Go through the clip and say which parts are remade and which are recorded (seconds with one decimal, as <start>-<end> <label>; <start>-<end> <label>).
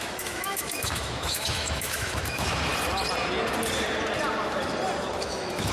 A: 0.0-2.7 remade; 2.7-5.2 recorded; 5.2-5.7 remade